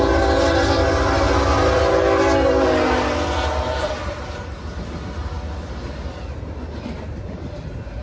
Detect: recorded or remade recorded